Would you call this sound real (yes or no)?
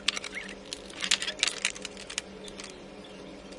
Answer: yes